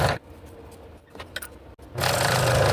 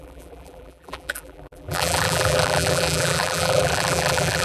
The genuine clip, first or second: first